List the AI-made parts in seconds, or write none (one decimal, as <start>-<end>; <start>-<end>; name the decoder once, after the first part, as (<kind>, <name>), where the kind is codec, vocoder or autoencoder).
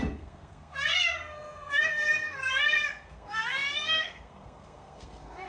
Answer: 0.0-5.5 (codec, SNAC)